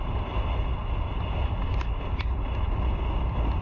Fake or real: real